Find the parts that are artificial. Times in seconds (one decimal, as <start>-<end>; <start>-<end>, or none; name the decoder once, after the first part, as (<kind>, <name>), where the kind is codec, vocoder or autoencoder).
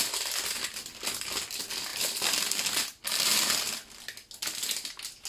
none